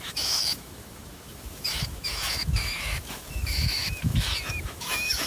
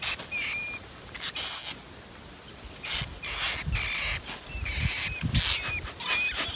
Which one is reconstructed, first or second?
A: first